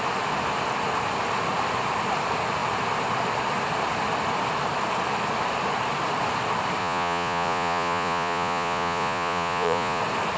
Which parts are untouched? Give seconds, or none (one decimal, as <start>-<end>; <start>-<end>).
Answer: 0.0-6.8; 10.0-10.4